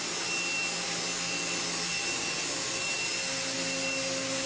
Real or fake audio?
real